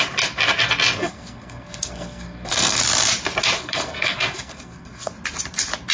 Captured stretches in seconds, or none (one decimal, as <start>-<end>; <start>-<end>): 0.0-1.0; 2.8-3.6; 5.1-5.9